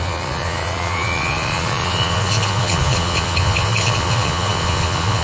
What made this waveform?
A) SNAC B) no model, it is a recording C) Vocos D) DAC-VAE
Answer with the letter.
C